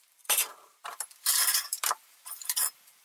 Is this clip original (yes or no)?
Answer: no